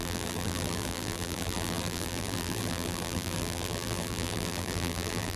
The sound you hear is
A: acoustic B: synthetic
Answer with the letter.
B